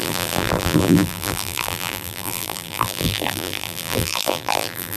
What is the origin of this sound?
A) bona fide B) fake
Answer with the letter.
B